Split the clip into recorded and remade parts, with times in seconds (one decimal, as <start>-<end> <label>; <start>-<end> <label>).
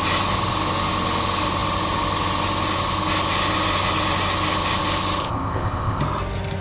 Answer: 0.0-5.2 recorded; 5.2-6.0 remade; 6.0-6.6 recorded